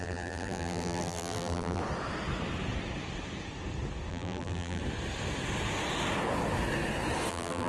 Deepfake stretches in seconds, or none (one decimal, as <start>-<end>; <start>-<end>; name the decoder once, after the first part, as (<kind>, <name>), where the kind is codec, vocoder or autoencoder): 0.0-1.8 (vocoder, BigVGAN v2); 4.1-4.8; 7.3-7.7